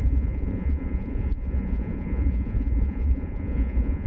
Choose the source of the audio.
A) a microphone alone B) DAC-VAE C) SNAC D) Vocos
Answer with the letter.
D